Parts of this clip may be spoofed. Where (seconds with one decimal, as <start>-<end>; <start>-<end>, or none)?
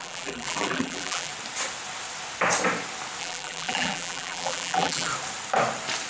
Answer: 0.0-1.3; 3.2-5.1